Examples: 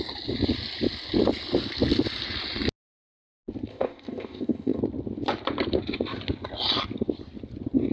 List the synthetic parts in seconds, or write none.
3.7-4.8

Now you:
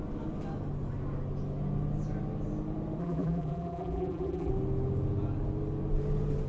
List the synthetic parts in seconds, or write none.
3.0-4.5

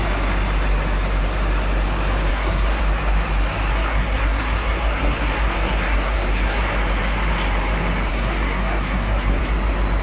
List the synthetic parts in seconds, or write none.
2.3-2.8; 3.7-6.6; 8.1-9.4

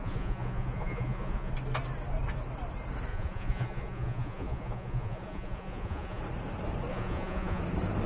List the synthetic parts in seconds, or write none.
0.0-1.5; 3.1-6.2; 6.9-7.6

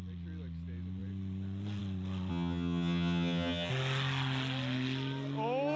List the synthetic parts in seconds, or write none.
2.3-3.7

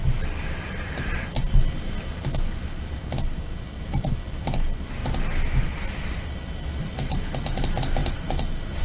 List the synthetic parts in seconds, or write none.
none